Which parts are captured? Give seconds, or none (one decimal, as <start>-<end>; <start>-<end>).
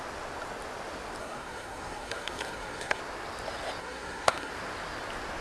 0.0-1.2; 3.0-3.8; 4.5-5.4